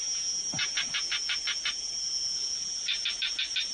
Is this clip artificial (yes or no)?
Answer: no